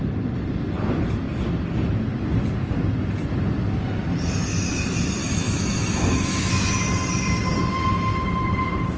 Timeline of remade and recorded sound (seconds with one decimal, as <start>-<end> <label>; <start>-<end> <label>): 0.0-5.2 recorded; 5.2-6.5 remade; 6.5-9.0 recorded